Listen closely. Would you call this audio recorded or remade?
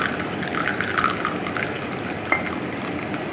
recorded